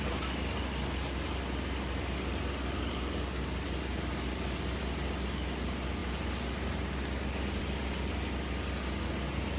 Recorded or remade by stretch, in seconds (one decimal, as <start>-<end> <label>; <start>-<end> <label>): 0.0-9.6 recorded